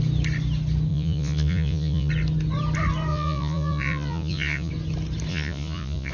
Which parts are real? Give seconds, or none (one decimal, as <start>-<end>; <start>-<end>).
0.0-0.9; 2.1-3.1; 4.7-5.3